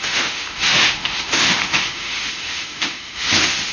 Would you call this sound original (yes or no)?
no